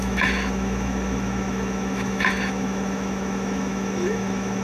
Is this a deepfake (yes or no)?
yes